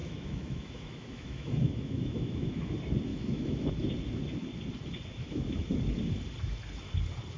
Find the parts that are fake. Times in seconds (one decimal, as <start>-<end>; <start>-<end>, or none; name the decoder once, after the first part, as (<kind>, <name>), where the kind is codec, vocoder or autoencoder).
0.0-2.7 (autoencoder, DAC-VAE); 3.1-3.7; 5.1-5.6